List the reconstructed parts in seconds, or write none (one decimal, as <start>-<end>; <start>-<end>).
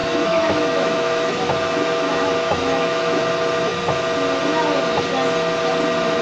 0.0-3.2